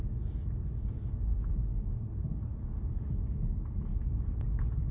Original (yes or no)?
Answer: yes